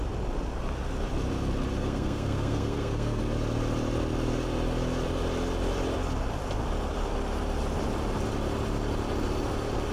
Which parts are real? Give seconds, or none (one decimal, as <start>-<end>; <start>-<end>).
0.0-1.8; 3.2-9.9

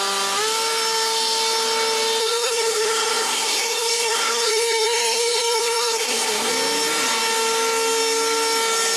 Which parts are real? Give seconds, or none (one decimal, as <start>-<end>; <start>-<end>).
0.0-2.2; 6.5-9.0

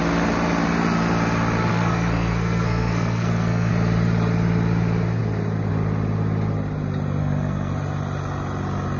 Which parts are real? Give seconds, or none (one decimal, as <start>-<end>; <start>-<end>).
0.0-1.7; 3.7-7.2; 7.7-9.0

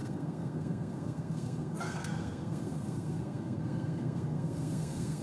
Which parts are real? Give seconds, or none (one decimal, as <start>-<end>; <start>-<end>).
none

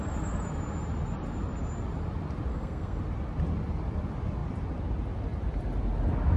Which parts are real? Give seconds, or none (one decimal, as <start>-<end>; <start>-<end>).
0.0-2.5; 3.0-6.4

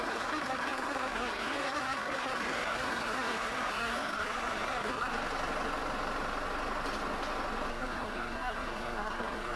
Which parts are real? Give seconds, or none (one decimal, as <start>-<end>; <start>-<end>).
5.1-7.7